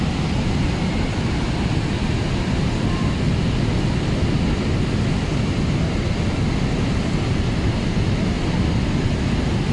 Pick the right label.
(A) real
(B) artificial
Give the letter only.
A